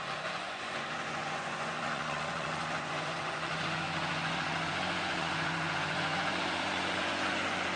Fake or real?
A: fake